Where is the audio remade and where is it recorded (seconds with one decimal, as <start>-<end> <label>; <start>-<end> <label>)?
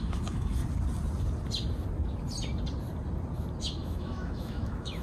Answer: 0.0-0.6 remade; 0.6-3.6 recorded; 3.6-5.0 remade